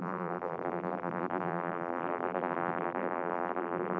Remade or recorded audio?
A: remade